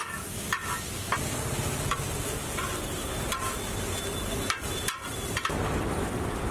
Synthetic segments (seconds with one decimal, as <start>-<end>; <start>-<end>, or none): 0.0-1.1; 4.8-6.5

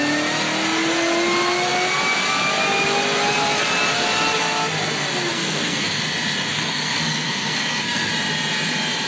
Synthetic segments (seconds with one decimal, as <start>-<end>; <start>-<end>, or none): 5.3-6.0; 6.5-8.1

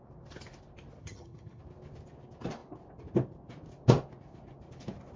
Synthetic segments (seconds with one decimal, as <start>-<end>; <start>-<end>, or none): 1.0-1.6

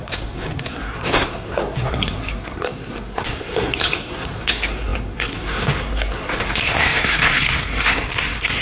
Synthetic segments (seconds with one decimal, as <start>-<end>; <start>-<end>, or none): 0.0-8.6

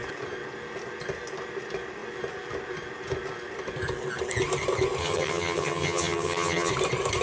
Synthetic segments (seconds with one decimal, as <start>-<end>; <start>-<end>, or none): 5.0-6.7

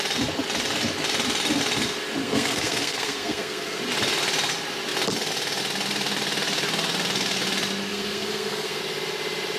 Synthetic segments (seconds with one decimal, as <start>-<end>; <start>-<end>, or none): 2.2-3.8; 7.9-8.8

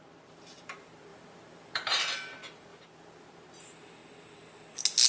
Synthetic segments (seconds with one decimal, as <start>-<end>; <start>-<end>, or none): 0.0-4.0